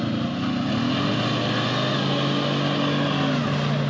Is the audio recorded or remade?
recorded